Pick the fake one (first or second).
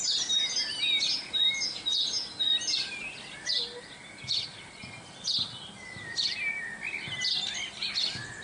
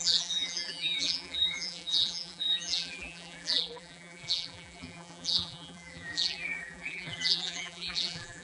second